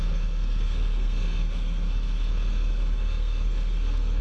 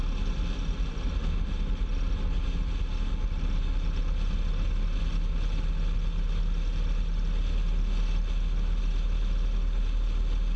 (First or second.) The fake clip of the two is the first